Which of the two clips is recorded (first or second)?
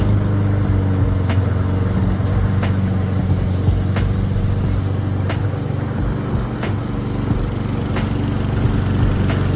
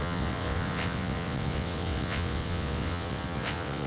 first